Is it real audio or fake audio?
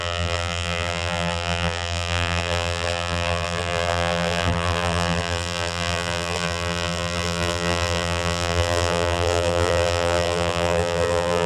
fake